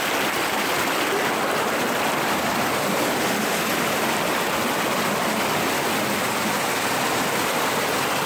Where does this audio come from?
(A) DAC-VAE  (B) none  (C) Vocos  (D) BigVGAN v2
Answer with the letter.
B